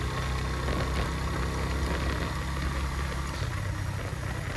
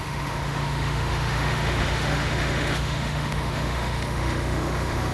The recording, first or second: first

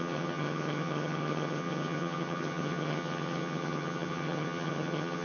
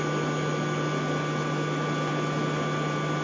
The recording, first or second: second